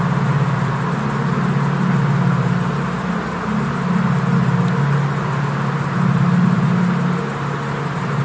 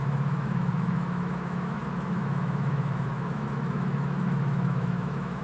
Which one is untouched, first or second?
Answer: first